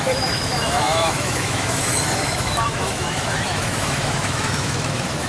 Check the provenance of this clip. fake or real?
fake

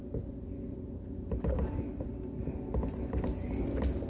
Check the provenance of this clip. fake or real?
real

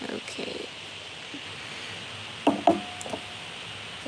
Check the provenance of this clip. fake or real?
real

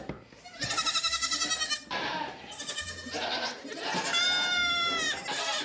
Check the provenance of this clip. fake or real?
real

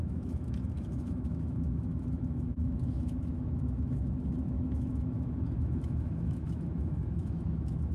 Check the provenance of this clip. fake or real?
fake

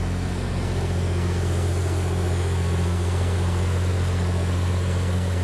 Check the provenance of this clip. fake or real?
fake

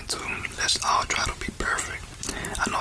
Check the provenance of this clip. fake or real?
real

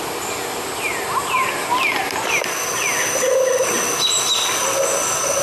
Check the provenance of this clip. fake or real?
real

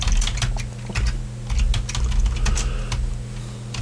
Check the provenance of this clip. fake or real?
real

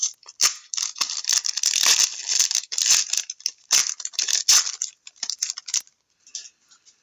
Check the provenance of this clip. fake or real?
real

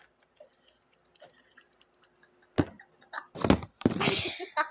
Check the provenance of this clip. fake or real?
real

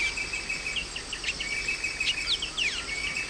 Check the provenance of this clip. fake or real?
real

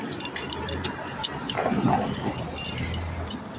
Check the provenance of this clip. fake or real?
real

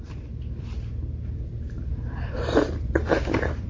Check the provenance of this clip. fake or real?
fake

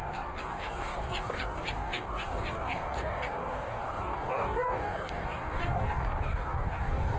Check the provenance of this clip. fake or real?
fake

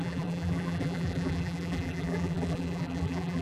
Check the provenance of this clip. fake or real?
fake